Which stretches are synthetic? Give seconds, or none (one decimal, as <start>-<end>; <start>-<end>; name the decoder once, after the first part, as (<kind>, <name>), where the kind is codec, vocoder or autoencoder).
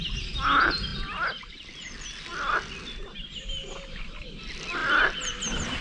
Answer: none